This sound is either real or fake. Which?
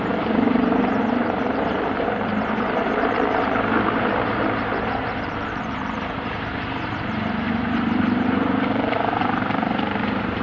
fake